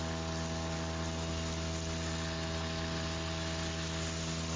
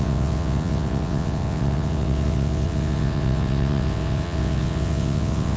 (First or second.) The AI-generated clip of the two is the second